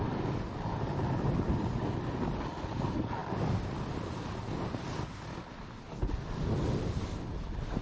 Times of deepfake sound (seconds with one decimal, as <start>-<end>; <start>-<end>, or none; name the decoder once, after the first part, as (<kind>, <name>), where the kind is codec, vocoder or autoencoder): none